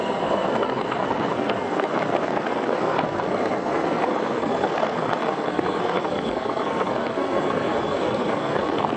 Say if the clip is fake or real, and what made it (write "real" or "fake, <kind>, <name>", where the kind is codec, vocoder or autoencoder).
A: fake, codec, SNAC